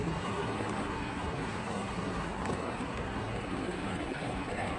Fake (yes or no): yes